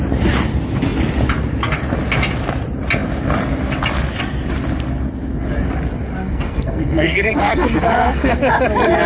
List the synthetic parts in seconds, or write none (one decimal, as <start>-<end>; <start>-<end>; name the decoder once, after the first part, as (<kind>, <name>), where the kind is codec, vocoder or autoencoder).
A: 6.2-8.4 (codec, SNAC)